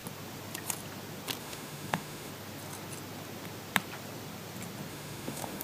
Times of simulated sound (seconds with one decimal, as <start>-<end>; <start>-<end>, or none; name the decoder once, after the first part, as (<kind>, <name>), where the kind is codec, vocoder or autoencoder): 1.4-2.3 (autoencoder, DAC-VAE); 4.9-5.6